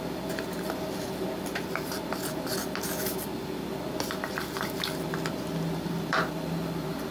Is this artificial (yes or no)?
no